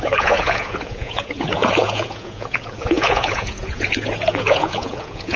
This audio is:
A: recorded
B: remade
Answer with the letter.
B